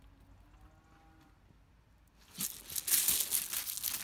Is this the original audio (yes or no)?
yes